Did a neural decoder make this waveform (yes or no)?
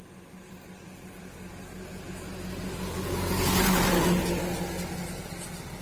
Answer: no